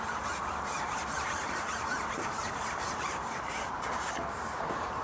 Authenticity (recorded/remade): remade